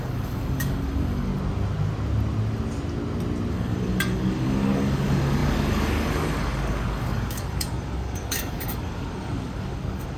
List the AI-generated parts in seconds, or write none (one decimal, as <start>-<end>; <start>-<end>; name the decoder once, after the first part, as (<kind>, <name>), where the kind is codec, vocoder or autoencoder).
0.0-1.3 (codec, DAC); 3.5-10.2